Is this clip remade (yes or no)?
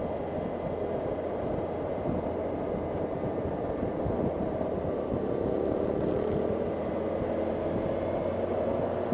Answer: no